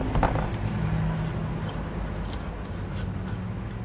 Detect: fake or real real